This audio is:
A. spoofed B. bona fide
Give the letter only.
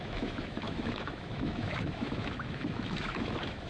A